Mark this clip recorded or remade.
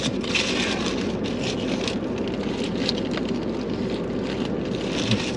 recorded